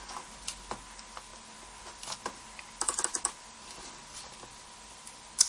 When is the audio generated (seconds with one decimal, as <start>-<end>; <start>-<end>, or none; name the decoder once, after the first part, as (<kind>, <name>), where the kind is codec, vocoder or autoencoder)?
none

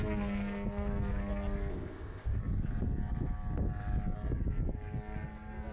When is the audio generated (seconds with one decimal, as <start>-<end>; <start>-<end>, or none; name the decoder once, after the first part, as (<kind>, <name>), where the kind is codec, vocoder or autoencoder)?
1.7-2.4 (codec, ZipCodec)

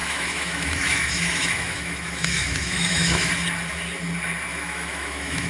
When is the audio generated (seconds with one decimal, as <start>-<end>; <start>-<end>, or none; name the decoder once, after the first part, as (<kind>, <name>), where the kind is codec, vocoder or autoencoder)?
0.0-3.3 (autoencoder, DAC-VAE); 4.5-5.5

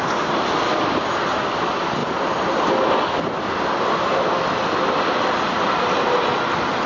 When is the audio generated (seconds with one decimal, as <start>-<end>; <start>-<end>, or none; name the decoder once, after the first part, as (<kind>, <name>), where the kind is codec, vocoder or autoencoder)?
none

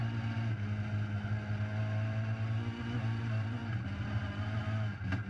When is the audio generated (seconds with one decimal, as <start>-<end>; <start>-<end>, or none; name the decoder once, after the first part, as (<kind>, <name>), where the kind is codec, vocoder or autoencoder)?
3.2-3.6 (vocoder, BigVGAN v2)

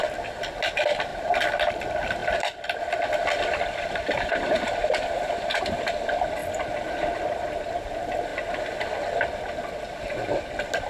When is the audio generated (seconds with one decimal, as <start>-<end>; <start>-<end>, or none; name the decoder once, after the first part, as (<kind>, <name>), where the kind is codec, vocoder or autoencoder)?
1.1-1.7 (vocoder, BigVGAN v2); 2.2-5.6; 6.4-7.5